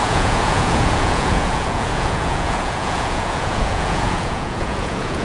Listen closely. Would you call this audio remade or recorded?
remade